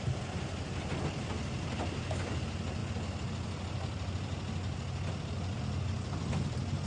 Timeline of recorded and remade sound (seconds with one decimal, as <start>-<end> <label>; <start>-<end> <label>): 0.0-6.9 recorded

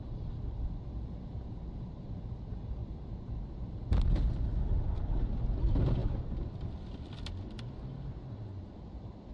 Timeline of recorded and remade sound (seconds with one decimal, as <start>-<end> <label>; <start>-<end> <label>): 0.0-2.8 recorded; 2.8-3.3 remade; 3.3-6.0 recorded; 6.0-9.3 remade